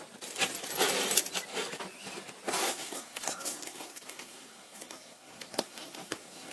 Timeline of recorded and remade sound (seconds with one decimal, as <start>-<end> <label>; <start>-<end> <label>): 0.0-2.6 recorded; 2.6-6.5 remade